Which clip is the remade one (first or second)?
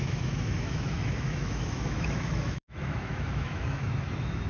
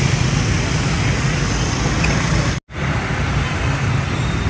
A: first